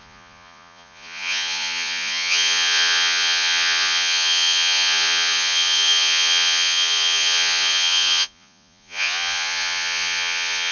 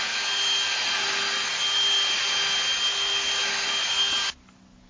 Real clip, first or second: second